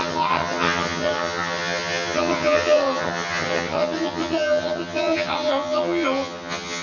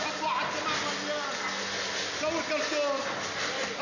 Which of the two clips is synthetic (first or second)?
first